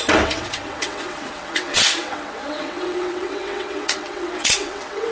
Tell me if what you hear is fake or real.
fake